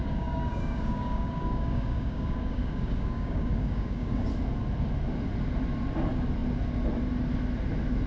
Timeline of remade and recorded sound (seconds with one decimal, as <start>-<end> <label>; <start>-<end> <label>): 0.0-4.3 remade; 4.3-8.1 recorded